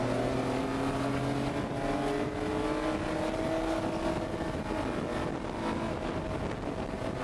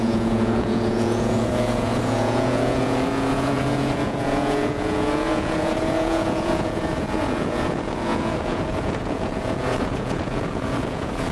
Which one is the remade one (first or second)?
second